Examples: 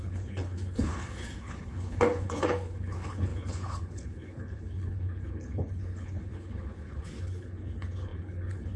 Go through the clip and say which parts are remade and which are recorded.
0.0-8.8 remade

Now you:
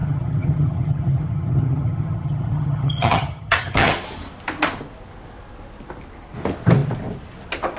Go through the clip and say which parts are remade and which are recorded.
0.0-3.9 remade; 3.9-7.8 recorded

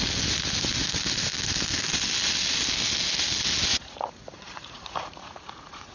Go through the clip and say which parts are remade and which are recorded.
0.0-3.7 recorded; 3.7-5.9 remade

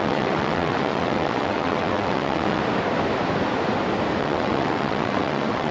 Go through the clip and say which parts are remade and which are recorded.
0.0-2.6 remade; 2.6-4.2 recorded; 4.2-5.7 remade

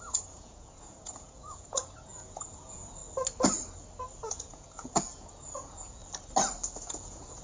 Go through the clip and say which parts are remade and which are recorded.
0.0-3.0 remade; 3.0-4.3 recorded; 4.3-6.0 remade; 6.0-6.8 recorded; 6.8-7.4 remade

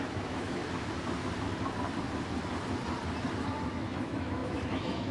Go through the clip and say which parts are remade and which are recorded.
0.0-0.6 remade; 0.6-3.7 recorded; 3.7-5.1 remade